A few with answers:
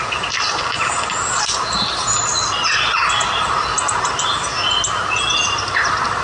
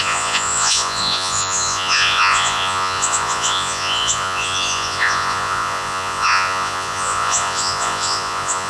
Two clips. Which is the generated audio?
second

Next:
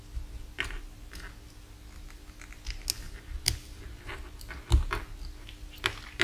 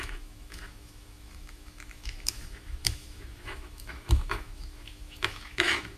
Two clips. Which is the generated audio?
second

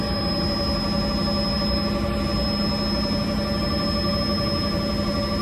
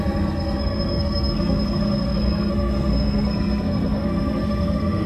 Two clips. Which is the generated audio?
second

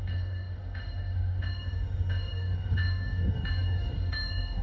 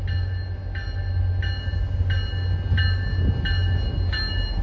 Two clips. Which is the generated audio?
first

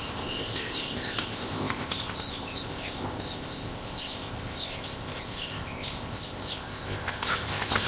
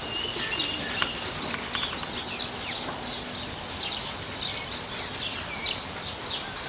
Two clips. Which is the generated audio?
first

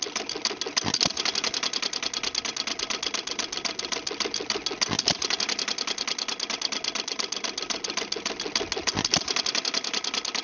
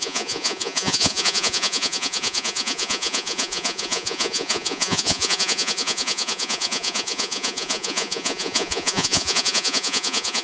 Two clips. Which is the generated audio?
second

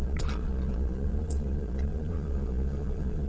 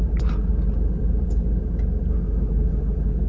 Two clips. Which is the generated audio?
first